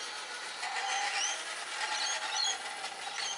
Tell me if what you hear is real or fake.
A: real